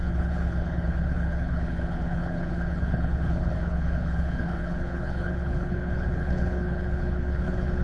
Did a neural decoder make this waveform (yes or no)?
yes